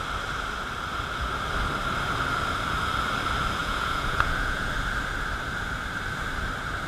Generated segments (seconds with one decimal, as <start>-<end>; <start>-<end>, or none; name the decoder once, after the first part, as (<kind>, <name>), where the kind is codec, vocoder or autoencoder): 3.6-4.7 (vocoder, Vocos)